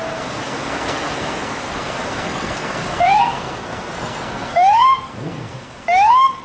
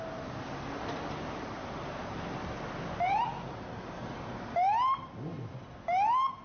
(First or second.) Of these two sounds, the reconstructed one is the first